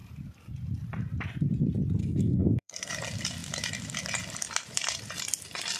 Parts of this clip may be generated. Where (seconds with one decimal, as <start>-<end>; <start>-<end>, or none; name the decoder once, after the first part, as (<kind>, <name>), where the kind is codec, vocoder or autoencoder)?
2.0-2.9 (codec, SNAC)